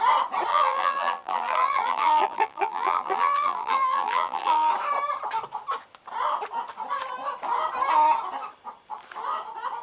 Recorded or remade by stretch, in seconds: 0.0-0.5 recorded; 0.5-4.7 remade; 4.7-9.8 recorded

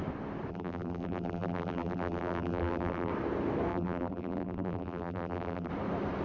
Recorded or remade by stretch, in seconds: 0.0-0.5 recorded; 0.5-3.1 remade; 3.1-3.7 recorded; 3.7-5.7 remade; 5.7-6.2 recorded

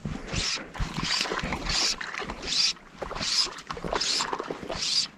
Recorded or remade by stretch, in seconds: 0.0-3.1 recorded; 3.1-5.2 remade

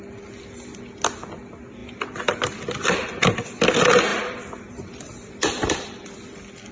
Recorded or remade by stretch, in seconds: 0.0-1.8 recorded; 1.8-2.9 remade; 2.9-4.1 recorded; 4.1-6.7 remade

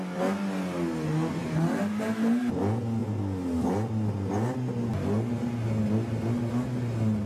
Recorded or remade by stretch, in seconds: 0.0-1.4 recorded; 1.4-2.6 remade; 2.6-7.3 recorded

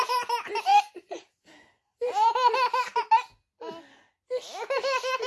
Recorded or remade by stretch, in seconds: 0.0-0.7 recorded; 0.7-2.3 remade; 2.3-5.3 recorded

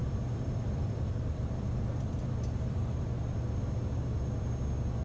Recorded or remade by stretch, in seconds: 0.0-3.0 remade; 3.0-5.0 recorded

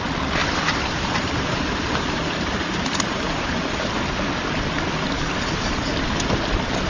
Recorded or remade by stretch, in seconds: 0.0-0.4 recorded; 0.4-4.0 remade; 4.0-6.9 recorded